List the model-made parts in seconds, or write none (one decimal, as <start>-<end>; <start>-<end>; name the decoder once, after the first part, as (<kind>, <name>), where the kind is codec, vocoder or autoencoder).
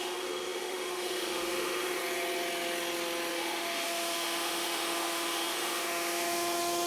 0.0-2.0 (autoencoder, DAC-VAE); 3.3-6.9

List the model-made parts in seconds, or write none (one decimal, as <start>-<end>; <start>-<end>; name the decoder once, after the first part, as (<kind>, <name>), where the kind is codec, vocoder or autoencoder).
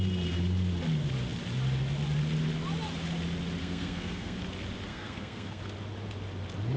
3.6-4.4 (codec, SNAC); 4.9-5.6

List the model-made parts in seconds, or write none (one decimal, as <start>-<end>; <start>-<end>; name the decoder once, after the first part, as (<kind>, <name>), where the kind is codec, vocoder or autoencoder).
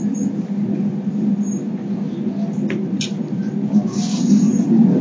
none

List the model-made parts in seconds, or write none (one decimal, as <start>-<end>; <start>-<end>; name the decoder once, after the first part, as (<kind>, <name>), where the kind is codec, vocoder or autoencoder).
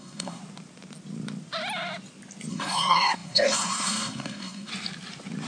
0.0-0.4 (codec, SNAC); 2.5-4.7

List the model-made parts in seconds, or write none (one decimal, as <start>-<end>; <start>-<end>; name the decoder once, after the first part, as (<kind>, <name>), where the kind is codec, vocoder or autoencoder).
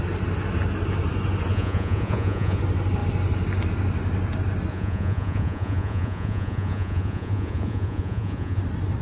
1.5-2.6 (vocoder, Vocos); 4.7-8.6